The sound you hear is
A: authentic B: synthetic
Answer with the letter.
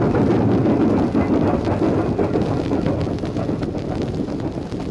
A